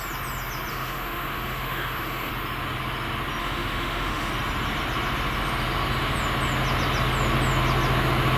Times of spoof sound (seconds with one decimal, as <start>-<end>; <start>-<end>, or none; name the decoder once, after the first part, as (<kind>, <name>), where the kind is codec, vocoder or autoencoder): 0.7-2.3 (autoencoder, DAC-VAE); 3.4-4.3